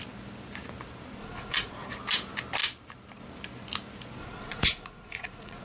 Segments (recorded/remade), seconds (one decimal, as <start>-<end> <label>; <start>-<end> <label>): 0.0-1.2 recorded; 1.2-1.7 remade; 1.7-4.2 recorded; 4.2-5.6 remade

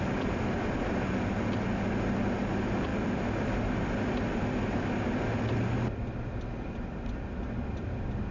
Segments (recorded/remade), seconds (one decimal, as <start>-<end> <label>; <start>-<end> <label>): 0.0-8.3 recorded

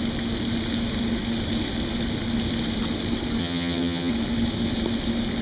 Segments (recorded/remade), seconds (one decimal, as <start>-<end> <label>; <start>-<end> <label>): 0.0-3.4 recorded; 3.4-4.1 remade; 4.1-5.4 recorded

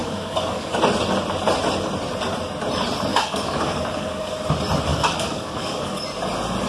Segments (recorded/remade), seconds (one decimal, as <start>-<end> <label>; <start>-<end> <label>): 0.0-0.8 remade; 0.8-3.1 recorded; 3.1-4.3 remade; 4.3-4.9 recorded; 4.9-6.0 remade; 6.0-6.7 recorded

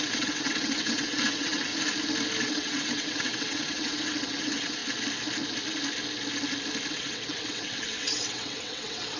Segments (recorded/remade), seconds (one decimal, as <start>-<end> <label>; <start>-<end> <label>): 0.0-1.7 remade; 1.7-2.4 recorded; 2.4-4.8 remade; 4.8-6.9 recorded; 6.9-9.2 remade

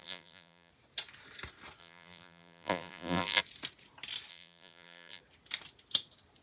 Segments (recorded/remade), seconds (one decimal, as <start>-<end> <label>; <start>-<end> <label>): 0.0-0.7 remade; 0.7-1.8 recorded; 1.8-3.4 remade; 3.4-4.3 recorded; 4.3-5.2 remade; 5.2-6.4 recorded